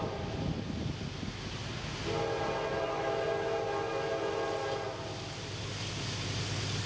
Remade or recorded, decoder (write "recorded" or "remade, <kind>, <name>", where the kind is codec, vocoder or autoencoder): recorded